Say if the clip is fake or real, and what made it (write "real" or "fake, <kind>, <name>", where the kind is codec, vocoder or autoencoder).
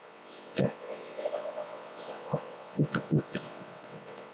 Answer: fake, vocoder, WaveNeXt